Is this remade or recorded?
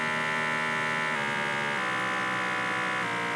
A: recorded